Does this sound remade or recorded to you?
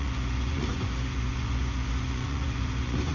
remade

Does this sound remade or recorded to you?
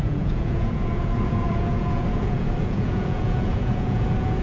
remade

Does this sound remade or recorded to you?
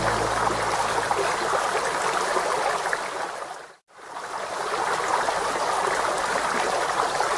recorded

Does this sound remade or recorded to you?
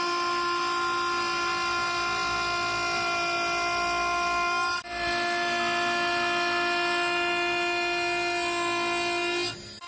recorded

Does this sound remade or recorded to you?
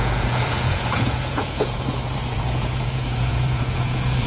remade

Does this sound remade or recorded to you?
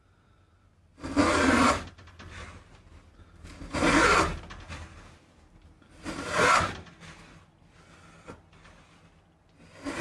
recorded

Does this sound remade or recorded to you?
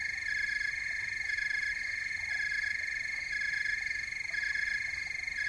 recorded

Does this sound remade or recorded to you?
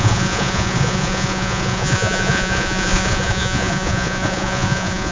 remade